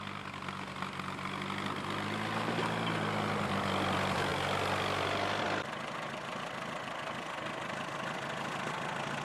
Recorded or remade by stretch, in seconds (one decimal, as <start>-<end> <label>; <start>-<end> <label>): 0.0-9.2 recorded